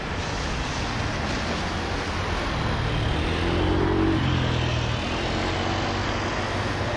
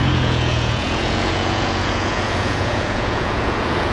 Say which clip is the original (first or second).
first